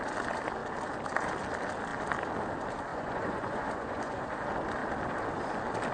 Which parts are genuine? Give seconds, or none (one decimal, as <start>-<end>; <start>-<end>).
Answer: 0.0-2.9; 4.2-5.9